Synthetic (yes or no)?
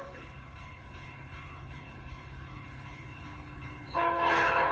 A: yes